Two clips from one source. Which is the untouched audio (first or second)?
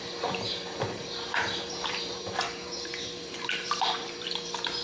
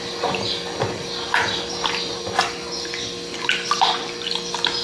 second